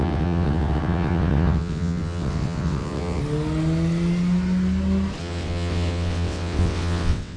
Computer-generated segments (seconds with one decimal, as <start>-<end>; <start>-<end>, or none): 0.0-3.2; 5.2-7.4